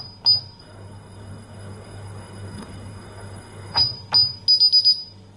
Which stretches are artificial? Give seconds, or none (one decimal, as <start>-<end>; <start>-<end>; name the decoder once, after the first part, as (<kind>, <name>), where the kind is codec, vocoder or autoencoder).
0.6-3.8 (codec, SNAC)